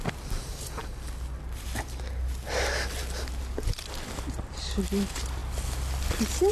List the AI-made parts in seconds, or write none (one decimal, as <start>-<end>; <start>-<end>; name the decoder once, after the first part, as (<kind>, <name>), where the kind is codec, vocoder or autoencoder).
none